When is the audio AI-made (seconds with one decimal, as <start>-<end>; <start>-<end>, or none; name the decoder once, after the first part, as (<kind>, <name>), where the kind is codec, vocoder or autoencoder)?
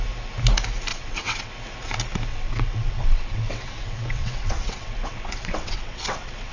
0.9-1.5 (vocoder, WaveNeXt); 2.3-6.5